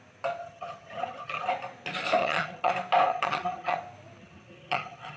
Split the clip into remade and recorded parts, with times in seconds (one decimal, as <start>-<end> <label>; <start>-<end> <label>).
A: 0.0-0.4 recorded; 0.4-1.5 remade; 1.5-2.2 recorded; 2.2-2.7 remade; 2.7-3.1 recorded; 3.1-3.8 remade; 3.8-4.2 recorded; 4.2-5.2 remade